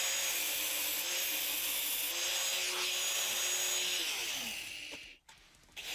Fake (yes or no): no